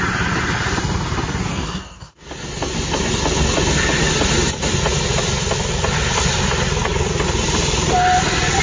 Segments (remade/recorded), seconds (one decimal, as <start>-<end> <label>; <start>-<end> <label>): 0.0-1.5 recorded; 1.5-2.2 remade; 2.2-8.6 recorded